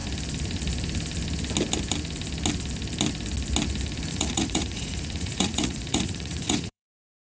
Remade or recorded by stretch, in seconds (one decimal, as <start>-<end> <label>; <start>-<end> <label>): 0.0-4.1 recorded; 4.1-7.3 remade